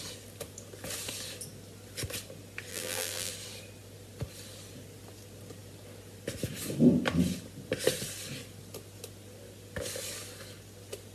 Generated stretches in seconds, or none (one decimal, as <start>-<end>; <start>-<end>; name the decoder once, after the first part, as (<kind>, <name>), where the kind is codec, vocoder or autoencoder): 2.7-3.3 (vocoder, BigVGAN v2)